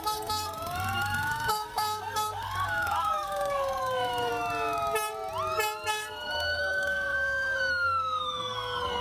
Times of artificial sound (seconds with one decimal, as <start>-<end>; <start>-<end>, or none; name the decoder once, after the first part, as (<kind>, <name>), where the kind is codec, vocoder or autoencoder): 0.0-4.3 (codec, SNAC); 5.9-9.0